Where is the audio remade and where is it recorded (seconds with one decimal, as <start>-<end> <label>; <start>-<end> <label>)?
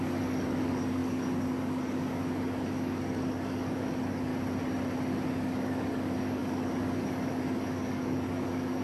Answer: 0.0-4.3 remade; 4.3-5.3 recorded; 5.3-8.8 remade